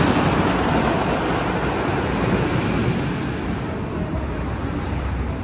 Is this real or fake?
real